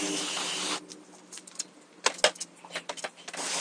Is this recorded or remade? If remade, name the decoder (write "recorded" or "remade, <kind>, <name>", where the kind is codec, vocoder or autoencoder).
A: recorded